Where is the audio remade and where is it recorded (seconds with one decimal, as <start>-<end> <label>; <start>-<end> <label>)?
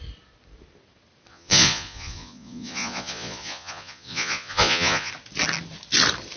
0.0-1.3 recorded; 1.3-5.1 remade; 5.1-6.4 recorded